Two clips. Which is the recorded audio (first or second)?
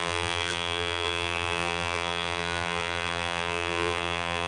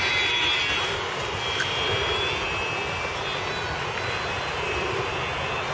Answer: second